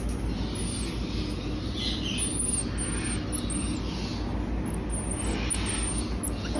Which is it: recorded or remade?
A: recorded